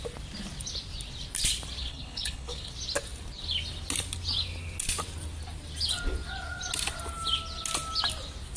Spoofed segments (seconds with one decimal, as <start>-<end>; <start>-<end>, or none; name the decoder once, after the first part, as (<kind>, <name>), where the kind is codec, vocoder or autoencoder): 1.8-2.7 (codec, HILCodec)